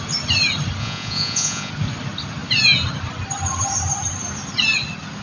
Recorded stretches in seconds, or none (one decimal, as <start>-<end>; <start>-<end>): 0.0-0.8; 1.7-5.2